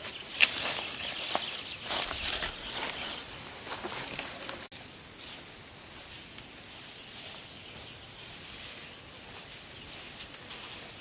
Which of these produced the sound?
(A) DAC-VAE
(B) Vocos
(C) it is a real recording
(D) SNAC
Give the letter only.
C